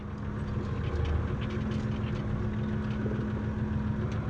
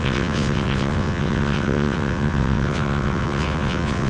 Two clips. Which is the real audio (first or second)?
first